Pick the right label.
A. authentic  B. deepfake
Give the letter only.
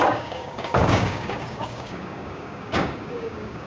B